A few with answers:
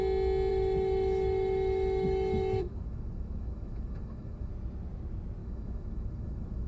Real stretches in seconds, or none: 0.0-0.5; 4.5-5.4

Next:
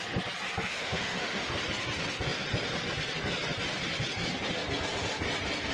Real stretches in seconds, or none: 0.0-0.7; 1.5-5.7

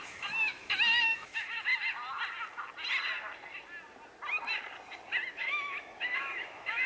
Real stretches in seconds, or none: 1.7-5.3

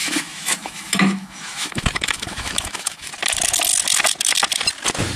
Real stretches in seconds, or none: 3.1-5.2